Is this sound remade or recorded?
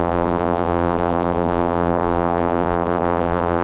remade